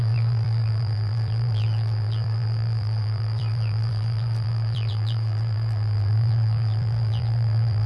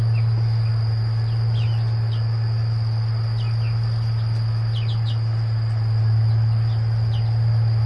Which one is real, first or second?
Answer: second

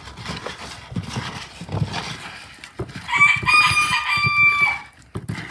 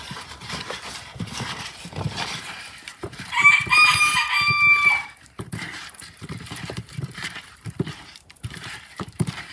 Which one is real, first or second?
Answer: first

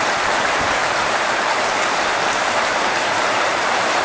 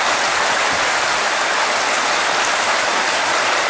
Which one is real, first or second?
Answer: second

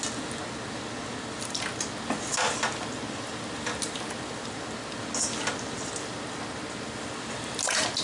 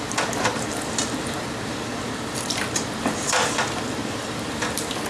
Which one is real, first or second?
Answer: first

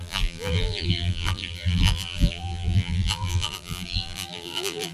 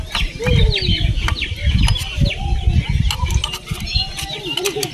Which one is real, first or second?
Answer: second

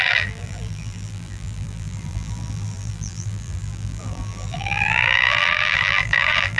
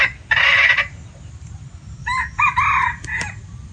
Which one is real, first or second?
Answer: second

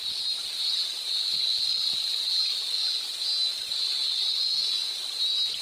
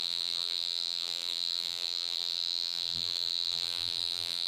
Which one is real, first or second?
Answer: first